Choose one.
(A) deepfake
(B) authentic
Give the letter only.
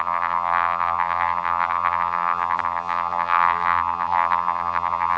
A